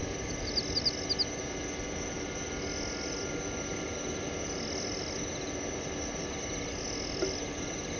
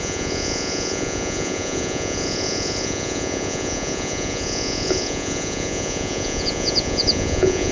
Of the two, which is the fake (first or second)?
second